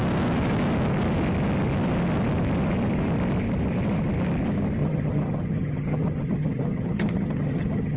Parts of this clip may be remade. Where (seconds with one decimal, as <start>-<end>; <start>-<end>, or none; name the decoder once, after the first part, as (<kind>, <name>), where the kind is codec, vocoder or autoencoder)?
4.8-8.0 (vocoder, HiFi-GAN)